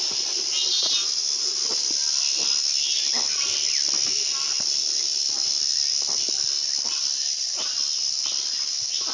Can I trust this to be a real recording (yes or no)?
yes